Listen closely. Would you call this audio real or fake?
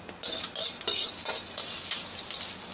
real